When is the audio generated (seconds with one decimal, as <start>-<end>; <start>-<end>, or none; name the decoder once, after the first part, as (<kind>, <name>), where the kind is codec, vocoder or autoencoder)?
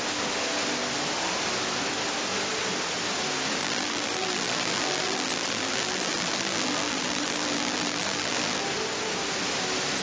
3.6-8.6 (vocoder, BigVGAN v2)